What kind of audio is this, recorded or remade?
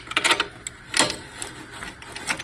recorded